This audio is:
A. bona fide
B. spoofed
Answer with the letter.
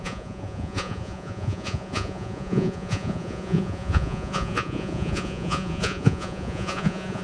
B